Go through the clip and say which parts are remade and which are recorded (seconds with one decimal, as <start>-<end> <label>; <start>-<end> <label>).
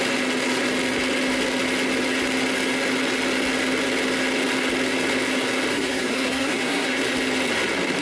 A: 0.0-5.7 recorded; 5.7-7.0 remade; 7.0-8.0 recorded